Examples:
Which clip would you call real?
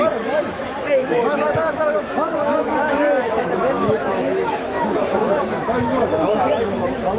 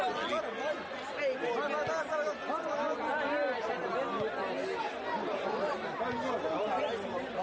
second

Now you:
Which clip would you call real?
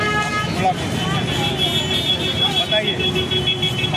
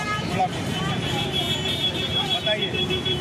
first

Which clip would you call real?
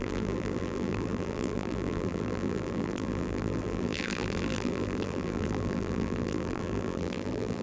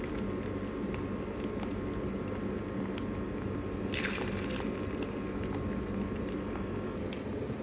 second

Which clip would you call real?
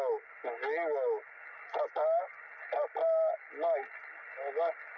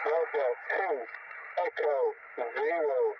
first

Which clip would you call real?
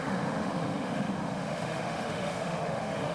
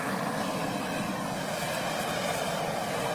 second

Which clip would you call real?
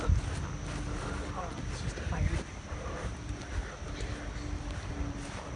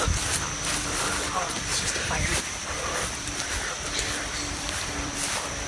first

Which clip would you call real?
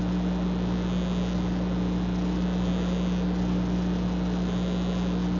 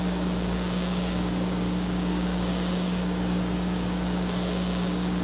first